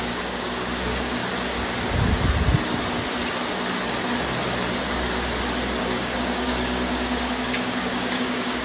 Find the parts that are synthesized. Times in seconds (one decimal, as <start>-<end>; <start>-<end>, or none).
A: 0.0-1.2; 5.8-8.6